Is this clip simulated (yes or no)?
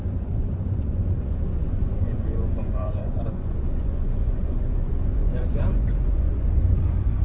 yes